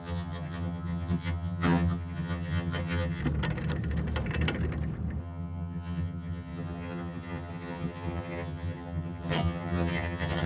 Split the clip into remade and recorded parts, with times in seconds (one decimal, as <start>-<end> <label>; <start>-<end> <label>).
0.0-3.2 remade; 3.2-5.2 recorded; 5.2-10.5 remade